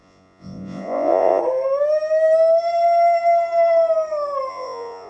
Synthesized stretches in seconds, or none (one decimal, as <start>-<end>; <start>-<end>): 0.0-1.4; 4.5-5.1